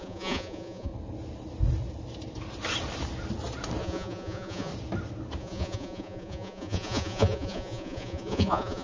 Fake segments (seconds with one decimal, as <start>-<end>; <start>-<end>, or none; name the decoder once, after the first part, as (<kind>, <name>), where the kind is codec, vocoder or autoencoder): 0.0-0.9 (vocoder, Vocos); 3.8-4.7; 5.4-8.8